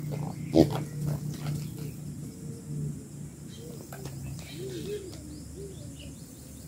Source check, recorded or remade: recorded